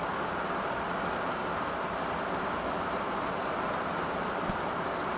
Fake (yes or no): no